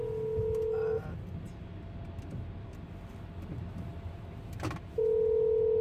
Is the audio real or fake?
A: real